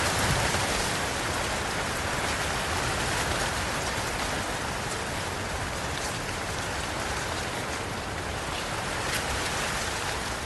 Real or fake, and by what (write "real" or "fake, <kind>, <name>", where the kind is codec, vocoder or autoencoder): real